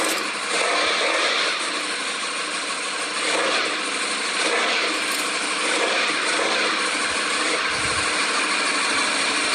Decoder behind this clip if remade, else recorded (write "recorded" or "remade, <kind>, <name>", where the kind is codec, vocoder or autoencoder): recorded